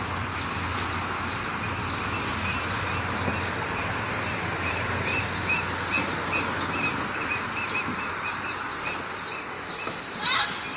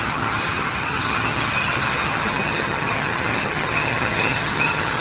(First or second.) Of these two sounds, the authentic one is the first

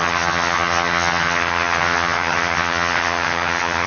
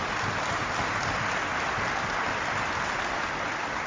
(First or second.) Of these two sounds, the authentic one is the second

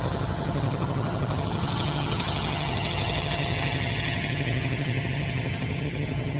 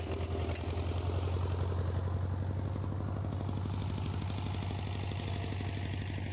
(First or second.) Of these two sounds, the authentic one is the second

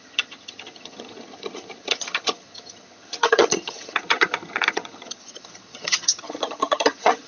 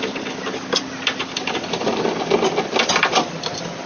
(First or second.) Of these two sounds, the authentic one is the second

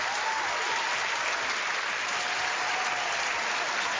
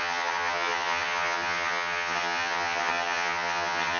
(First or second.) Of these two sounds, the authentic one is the first